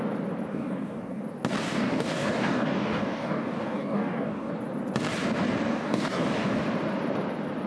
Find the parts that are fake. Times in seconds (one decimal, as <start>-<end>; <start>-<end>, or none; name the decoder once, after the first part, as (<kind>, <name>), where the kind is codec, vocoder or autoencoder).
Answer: 0.5-1.2 (codec, DAC); 1.6-4.5; 5.7-6.6